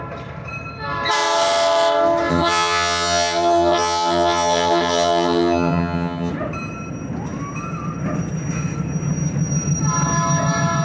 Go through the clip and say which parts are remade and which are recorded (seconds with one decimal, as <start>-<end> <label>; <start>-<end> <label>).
0.0-2.3 recorded; 2.3-6.3 remade; 6.3-10.8 recorded